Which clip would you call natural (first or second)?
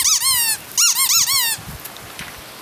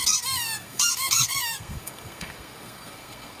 first